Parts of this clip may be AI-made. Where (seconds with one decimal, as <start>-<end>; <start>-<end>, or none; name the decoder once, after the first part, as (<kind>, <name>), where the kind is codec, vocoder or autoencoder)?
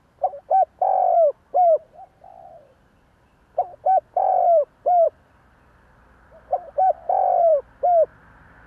0.0-3.3 (vocoder, BigVGAN v2); 4.3-7.5